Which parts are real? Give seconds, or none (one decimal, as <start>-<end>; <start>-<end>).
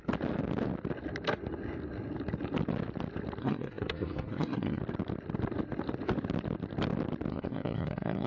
0.0-3.4; 4.8-7.3